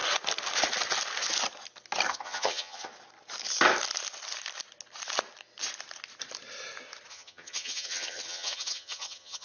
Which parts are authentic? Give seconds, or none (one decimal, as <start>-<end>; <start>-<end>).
0.0-2.1; 2.9-7.1